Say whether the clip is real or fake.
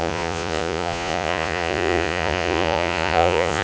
fake